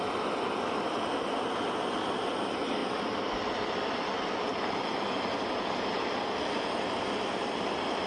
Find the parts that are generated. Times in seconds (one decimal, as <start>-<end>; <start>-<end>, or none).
none